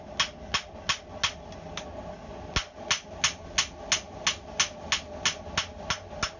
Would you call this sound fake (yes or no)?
no